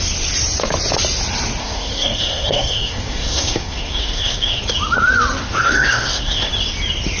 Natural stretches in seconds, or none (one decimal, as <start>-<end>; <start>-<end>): 0.0-1.6; 4.6-5.4; 6.5-7.2